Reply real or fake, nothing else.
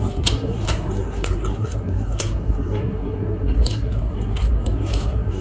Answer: fake